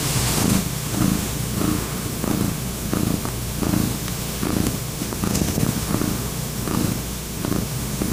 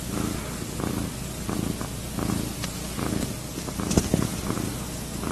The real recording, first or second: second